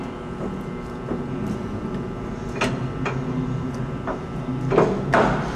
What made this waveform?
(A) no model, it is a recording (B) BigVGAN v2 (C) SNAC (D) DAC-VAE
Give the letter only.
A